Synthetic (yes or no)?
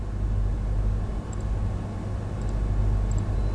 no